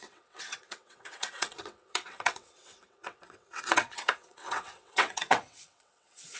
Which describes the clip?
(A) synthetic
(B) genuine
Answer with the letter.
A